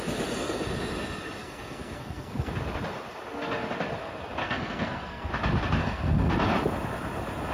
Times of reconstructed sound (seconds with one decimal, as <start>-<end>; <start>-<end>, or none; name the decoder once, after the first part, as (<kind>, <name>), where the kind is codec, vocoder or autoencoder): 1.4-2.5 (codec, SNAC); 4.4-5.3; 5.8-6.3